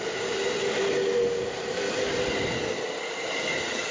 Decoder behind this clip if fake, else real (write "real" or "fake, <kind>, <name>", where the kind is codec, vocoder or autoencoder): real